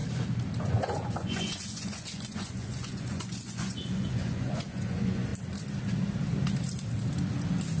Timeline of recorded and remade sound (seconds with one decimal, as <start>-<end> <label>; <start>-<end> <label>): 0.0-0.6 recorded; 0.6-5.3 remade; 5.3-7.8 recorded